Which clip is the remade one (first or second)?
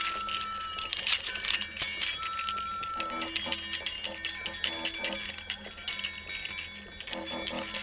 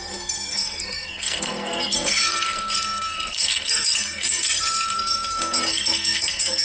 second